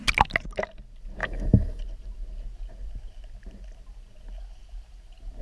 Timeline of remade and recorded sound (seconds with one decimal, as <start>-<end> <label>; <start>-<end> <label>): 0.0-1.2 recorded; 1.2-1.8 remade; 1.8-5.4 recorded